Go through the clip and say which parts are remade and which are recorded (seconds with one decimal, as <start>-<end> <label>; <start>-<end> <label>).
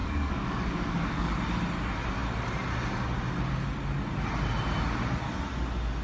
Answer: 0.0-1.4 remade; 1.4-6.0 recorded